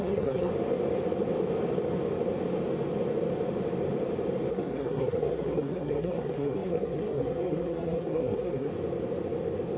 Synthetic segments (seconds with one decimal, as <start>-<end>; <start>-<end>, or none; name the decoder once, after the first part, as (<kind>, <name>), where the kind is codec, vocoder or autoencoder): 0.0-0.5 (codec, SNAC); 4.5-8.7